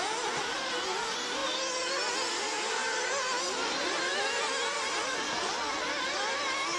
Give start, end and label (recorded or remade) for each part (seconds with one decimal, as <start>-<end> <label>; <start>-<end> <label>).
0.0-6.8 recorded